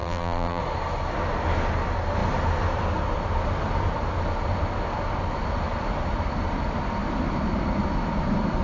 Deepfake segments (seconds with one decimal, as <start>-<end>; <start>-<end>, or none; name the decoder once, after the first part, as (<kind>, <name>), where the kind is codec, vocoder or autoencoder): 0.0-0.6 (vocoder, BigVGAN v2)